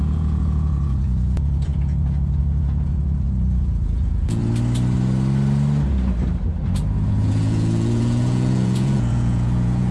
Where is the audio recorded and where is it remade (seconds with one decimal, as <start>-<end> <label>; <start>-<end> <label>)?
0.0-4.4 remade; 4.4-7.1 recorded; 7.1-9.9 remade